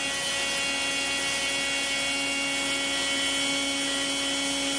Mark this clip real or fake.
real